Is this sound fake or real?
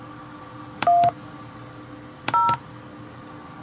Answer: real